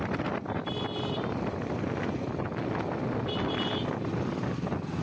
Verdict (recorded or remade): recorded